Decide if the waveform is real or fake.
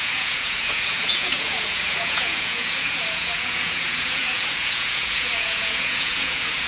fake